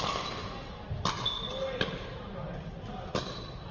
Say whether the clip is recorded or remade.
recorded